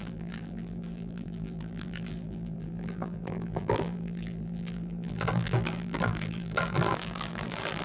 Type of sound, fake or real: fake